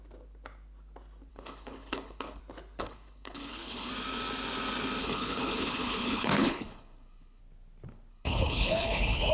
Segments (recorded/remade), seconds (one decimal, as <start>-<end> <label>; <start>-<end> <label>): 0.0-1.3 recorded; 1.3-2.4 remade; 2.4-2.8 recorded; 2.8-3.9 remade; 3.9-5.0 recorded; 5.0-7.4 remade; 7.4-8.1 recorded; 8.1-9.3 remade